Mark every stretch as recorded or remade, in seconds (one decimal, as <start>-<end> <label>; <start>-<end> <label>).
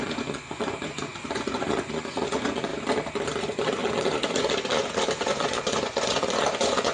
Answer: 0.0-2.7 remade; 2.7-3.4 recorded; 3.4-6.9 remade